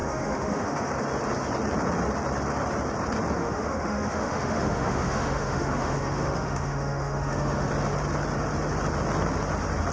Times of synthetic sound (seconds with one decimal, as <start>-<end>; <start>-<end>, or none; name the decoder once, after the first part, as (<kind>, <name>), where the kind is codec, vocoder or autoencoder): 0.0-0.9 (autoencoder, DAC-VAE); 3.4-7.7

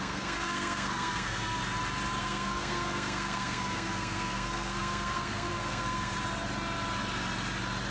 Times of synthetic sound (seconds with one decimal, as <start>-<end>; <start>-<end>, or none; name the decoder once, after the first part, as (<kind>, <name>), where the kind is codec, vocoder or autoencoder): 0.0-1.6 (codec, SNAC); 2.2-6.1

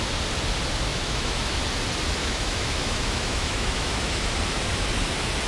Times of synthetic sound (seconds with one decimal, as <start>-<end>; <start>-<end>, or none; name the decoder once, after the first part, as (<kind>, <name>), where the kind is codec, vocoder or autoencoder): 0.9-1.6 (autoencoder, DAC-VAE); 2.2-4.3